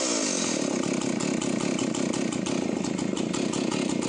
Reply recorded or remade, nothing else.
recorded